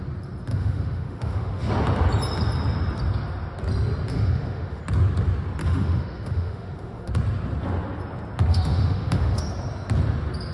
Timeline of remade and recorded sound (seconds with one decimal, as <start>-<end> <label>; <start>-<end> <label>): 0.0-0.5 recorded; 0.5-1.7 remade; 1.7-4.1 recorded; 4.1-4.8 remade; 4.8-5.6 recorded; 5.6-7.1 remade; 7.1-8.5 recorded; 8.5-9.4 remade; 9.4-10.5 recorded